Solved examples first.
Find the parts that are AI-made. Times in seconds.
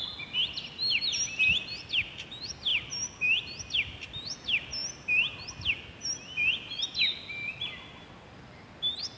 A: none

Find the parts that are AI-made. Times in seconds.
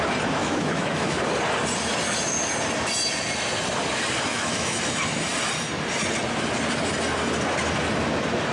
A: 0.4-1.2 (autoencoder, DAC-VAE); 4.3-4.8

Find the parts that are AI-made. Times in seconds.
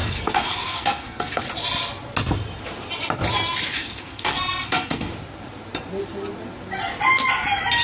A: 0.0-1.4 (codec, SNAC); 3.7-5.1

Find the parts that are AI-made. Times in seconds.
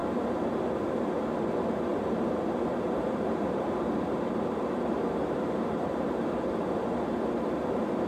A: 1.9-6.5 (vocoder, BigVGAN v2)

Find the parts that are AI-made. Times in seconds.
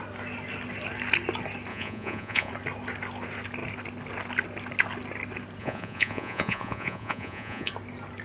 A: 1.7-2.5 (vocoder, Vocos); 5.6-7.7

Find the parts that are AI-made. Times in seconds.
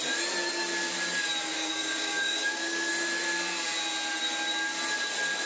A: 1.4-2.9 (codec, DAC)